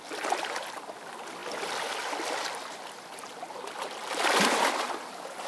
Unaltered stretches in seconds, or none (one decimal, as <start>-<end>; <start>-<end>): 0.0-5.5